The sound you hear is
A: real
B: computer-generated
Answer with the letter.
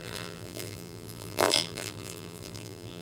B